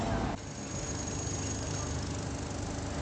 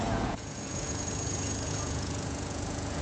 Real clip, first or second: first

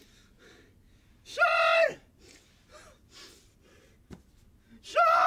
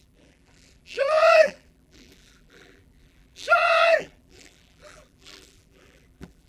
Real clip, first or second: first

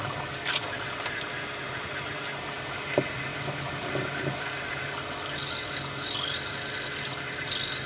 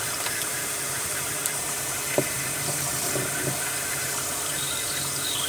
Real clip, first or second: first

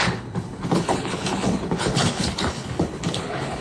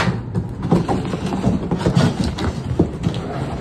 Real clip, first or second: second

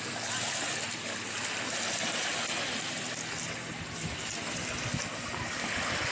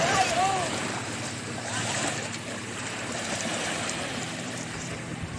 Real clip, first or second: first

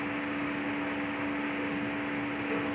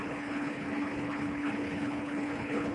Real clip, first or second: first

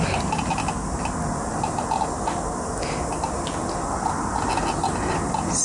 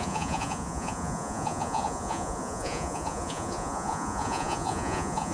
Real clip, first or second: first